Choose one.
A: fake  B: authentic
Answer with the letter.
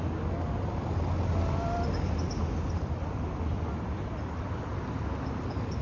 B